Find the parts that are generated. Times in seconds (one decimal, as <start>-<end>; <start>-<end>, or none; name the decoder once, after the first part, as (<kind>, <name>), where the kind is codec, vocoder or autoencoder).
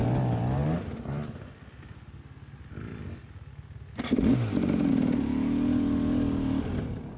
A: none